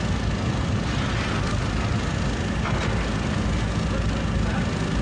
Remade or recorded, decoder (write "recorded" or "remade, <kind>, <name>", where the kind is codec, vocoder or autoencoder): recorded